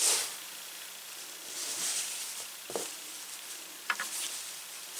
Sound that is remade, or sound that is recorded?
recorded